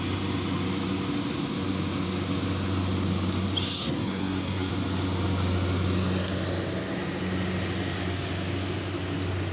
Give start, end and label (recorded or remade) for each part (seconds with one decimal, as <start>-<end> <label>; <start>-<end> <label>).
0.0-3.8 recorded; 3.8-4.7 remade; 4.7-9.5 recorded